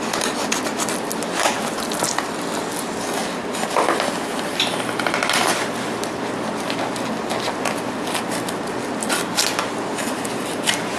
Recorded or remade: recorded